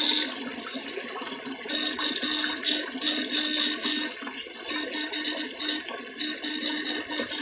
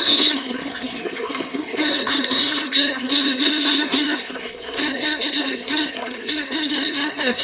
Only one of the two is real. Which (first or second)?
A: first